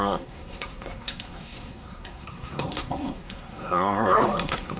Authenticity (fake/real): fake